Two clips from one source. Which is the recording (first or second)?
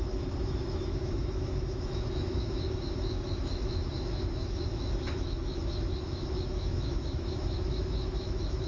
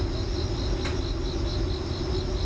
second